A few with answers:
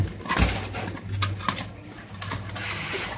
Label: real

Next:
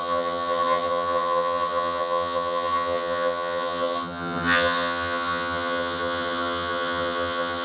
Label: fake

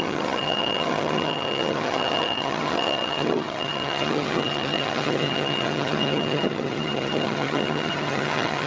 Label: fake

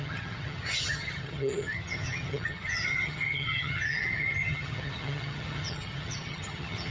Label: fake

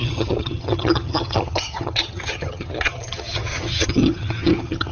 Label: fake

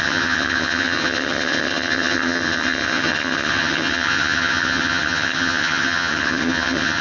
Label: fake